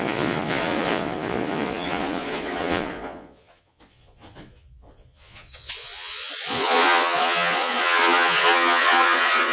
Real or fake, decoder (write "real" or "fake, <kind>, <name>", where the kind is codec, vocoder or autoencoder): fake, vocoder, Vocos